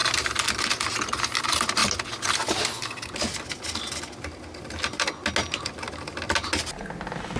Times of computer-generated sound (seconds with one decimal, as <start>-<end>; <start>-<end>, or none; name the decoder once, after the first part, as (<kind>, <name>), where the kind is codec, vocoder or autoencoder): none